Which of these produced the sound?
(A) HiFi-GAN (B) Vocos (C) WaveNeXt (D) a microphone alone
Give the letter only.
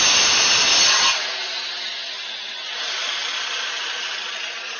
D